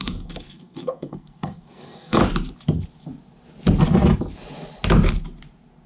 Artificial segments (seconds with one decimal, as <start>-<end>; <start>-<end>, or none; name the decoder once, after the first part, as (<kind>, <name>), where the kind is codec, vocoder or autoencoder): 0.0-2.2 (codec, SNAC)